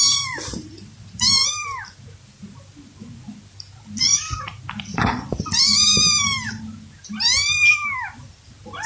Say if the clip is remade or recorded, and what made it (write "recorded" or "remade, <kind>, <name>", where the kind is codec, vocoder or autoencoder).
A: recorded